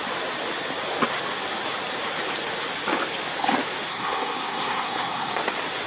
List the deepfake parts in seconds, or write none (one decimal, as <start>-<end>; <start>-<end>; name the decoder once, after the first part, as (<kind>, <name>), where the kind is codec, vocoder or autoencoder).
3.9-5.4 (codec, SNAC)